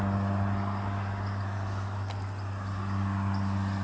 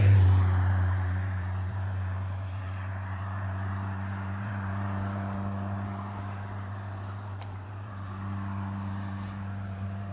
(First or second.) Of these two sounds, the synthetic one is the second